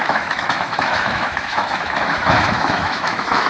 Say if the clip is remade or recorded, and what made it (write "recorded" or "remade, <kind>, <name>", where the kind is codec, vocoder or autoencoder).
remade, autoencoder, DAC-VAE